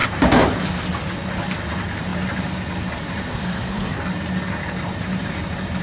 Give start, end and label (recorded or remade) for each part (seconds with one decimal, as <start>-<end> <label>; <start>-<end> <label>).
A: 0.0-3.3 recorded; 3.3-4.0 remade; 4.0-5.8 recorded